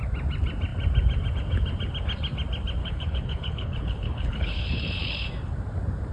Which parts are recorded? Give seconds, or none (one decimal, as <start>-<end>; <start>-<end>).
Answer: 0.0-2.8; 5.3-6.1